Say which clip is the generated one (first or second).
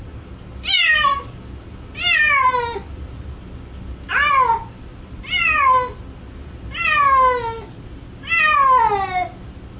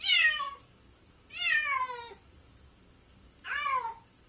second